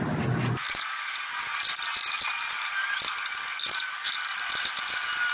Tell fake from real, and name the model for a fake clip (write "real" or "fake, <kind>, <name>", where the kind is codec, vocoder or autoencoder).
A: real